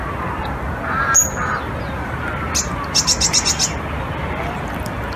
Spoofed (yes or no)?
no